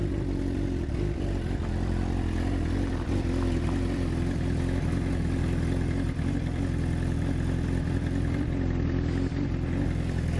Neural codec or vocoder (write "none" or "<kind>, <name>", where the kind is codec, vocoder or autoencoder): vocoder, BigVGAN v2